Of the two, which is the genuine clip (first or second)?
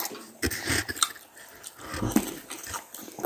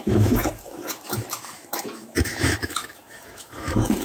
first